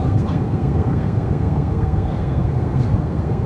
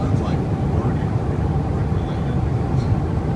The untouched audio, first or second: second